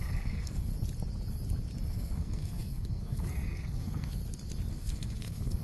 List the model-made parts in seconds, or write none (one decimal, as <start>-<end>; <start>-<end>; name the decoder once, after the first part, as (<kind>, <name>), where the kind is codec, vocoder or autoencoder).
0.0-0.7 (codec, SNAC); 1.9-4.2; 4.7-5.6